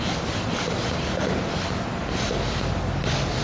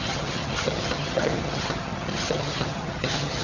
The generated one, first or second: second